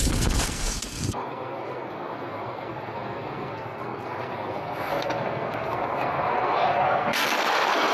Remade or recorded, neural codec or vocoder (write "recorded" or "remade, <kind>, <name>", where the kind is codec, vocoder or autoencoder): remade, codec, SNAC